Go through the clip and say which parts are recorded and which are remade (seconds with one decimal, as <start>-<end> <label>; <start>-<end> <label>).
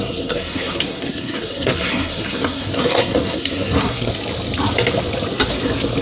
0.0-4.1 remade; 4.1-6.0 recorded